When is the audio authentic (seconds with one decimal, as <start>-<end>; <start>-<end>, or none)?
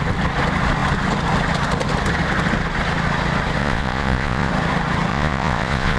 0.0-3.6; 4.5-5.1